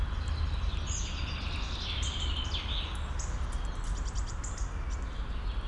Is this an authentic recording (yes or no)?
yes